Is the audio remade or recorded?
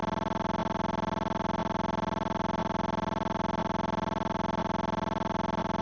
recorded